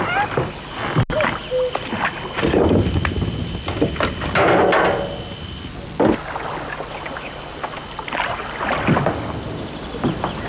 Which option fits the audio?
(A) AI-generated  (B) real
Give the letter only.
B